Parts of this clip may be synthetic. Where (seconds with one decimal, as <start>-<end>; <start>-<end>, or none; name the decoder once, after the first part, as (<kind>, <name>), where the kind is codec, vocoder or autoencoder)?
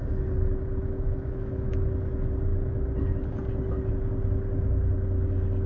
0.8-1.9 (autoencoder, DAC-VAE)